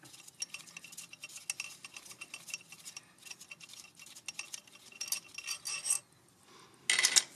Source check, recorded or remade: recorded